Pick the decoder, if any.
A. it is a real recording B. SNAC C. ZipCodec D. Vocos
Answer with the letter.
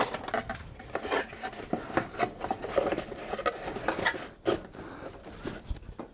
A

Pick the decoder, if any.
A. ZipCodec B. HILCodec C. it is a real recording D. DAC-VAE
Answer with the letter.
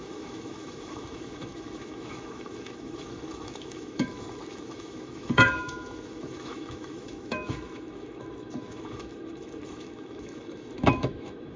D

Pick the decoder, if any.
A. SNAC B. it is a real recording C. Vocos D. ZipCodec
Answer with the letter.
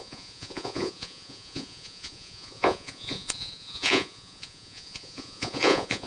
C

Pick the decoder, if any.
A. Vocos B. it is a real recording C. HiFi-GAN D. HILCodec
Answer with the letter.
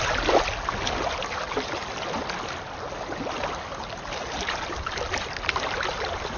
B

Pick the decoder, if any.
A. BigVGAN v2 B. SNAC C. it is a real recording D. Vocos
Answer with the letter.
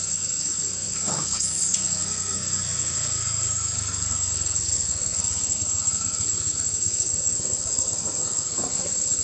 B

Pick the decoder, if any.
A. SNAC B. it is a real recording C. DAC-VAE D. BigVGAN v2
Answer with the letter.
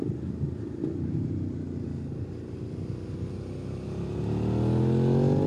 B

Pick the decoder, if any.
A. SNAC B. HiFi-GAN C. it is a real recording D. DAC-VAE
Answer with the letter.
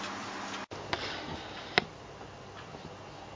C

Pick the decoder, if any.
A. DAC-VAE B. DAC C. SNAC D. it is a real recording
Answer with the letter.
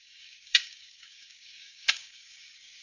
B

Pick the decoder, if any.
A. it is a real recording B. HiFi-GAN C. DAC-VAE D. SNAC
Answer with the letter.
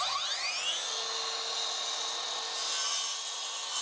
A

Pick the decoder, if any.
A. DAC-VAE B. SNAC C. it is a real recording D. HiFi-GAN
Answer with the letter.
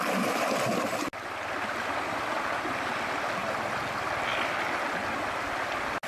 C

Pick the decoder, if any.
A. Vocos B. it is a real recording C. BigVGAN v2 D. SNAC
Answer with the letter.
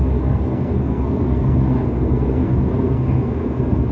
D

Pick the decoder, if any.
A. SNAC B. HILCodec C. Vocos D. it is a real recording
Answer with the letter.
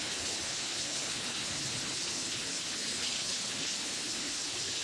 B